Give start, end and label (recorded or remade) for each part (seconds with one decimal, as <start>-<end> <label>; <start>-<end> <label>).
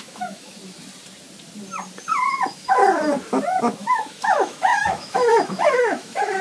0.0-0.6 remade; 0.6-2.3 recorded; 2.3-2.8 remade; 2.8-3.6 recorded; 3.6-6.4 remade